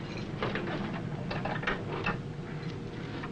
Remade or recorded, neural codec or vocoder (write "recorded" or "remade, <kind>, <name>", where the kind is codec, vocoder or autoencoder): recorded